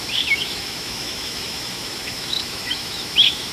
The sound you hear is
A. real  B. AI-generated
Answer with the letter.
B